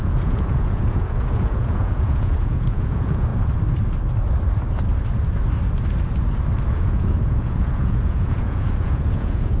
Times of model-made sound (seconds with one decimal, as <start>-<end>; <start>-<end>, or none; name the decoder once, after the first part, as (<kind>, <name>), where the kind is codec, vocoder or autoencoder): 0.0-3.3 (vocoder, Vocos); 6.7-9.6